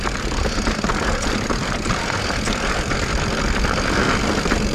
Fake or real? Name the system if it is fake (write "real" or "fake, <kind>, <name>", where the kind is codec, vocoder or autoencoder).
real